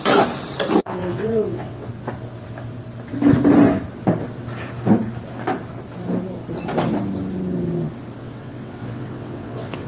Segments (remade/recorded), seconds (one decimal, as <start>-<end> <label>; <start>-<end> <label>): 0.0-0.8 recorded; 0.8-1.9 remade; 1.9-8.2 recorded; 8.2-9.9 remade

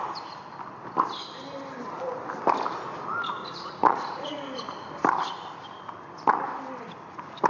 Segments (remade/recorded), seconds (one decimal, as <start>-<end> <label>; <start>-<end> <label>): 0.0-3.4 recorded; 3.4-4.4 remade; 4.4-7.5 recorded

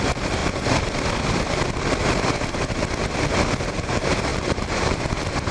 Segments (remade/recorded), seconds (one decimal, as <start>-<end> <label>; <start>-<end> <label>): 0.0-0.4 remade; 0.4-3.7 recorded; 3.7-5.5 remade

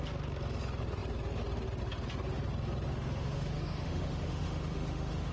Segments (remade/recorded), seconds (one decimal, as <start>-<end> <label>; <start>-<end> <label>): 0.0-2.9 recorded; 2.9-5.3 remade

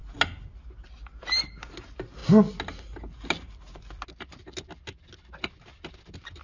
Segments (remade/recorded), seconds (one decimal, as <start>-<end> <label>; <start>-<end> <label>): 0.0-6.4 recorded

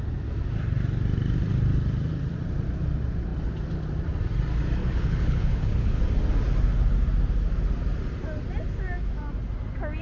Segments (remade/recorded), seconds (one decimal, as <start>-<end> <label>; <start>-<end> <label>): 0.0-4.8 recorded; 4.8-6.0 remade; 6.0-10.0 recorded